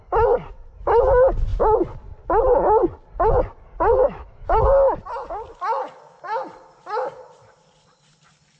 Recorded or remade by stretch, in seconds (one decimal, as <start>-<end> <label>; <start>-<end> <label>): 0.0-3.9 recorded; 3.9-4.6 remade; 4.6-8.6 recorded